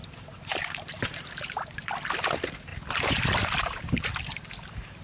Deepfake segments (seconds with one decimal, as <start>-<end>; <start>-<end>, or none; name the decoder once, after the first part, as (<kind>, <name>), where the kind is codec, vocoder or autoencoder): 0.0-1.9 (vocoder, BigVGAN v2); 2.7-3.8